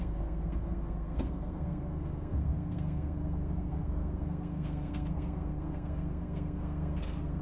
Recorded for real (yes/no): no